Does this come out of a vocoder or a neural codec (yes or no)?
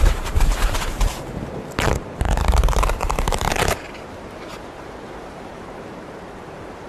yes